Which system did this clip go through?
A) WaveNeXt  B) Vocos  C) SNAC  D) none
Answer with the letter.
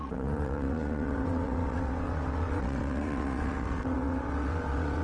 A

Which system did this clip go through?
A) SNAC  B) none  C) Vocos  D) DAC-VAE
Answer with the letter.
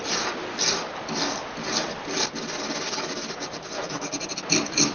B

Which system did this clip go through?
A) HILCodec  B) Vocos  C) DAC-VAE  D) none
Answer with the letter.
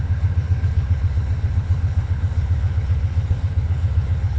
A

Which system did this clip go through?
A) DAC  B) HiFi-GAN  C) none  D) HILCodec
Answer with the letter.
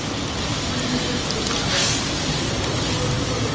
C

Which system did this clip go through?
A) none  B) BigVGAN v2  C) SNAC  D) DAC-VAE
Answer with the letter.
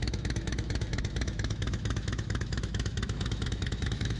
D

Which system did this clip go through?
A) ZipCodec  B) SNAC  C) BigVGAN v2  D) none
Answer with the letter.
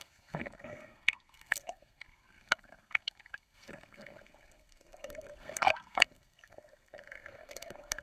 B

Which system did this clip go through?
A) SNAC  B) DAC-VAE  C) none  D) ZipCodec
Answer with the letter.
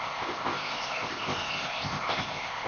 D